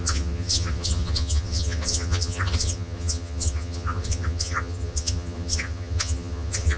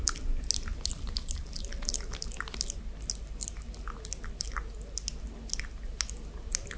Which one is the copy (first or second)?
first